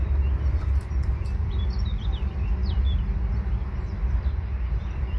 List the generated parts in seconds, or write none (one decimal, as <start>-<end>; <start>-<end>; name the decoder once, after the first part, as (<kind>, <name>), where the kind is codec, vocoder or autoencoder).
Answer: 0.0-5.2 (vocoder, BigVGAN v2)